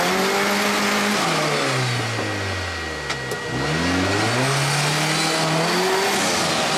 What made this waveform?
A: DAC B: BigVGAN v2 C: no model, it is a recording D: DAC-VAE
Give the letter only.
C